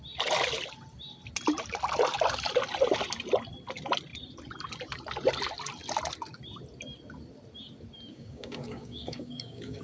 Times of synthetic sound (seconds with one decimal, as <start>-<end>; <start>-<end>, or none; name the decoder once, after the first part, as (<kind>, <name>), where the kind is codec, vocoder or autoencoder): 8.1-9.8 (codec, DAC)